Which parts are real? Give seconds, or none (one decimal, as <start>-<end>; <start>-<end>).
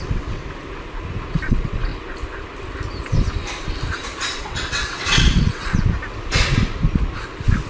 0.4-1.3; 1.9-4.4; 5.7-7.7